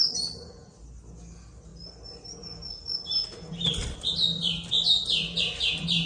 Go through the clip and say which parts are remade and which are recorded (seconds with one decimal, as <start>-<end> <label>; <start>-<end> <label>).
0.0-6.1 recorded

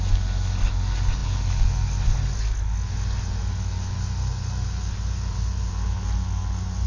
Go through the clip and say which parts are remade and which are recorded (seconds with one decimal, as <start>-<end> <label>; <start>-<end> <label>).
0.0-6.9 recorded